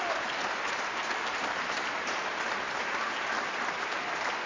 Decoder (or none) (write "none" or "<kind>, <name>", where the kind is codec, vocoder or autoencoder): vocoder, BigVGAN v2